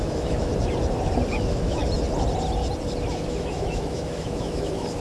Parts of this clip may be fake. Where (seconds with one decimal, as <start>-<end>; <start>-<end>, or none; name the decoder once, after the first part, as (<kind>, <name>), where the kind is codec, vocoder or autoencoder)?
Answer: 0.0-0.5 (autoencoder, DAC-VAE); 1.4-1.8; 3.1-5.0